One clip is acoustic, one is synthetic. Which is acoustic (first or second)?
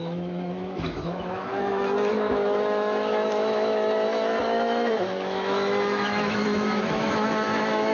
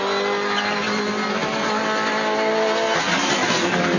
second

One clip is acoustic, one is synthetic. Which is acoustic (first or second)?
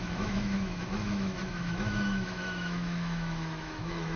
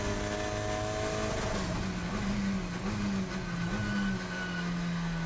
second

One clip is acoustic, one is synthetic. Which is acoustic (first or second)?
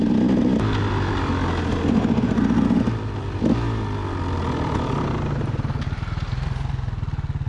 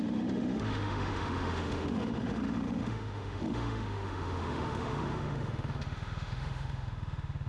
first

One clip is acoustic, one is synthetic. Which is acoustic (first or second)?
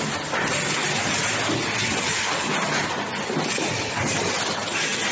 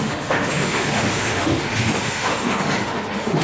first